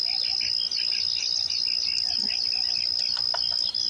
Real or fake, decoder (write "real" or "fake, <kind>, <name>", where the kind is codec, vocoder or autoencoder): real